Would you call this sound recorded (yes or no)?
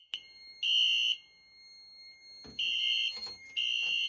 yes